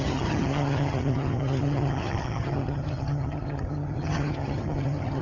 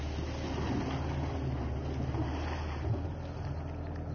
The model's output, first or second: first